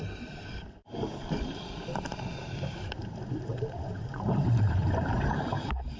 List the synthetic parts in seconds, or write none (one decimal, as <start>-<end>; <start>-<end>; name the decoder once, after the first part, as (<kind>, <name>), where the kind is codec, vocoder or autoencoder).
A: 0.0-6.0 (vocoder, BigVGAN v2)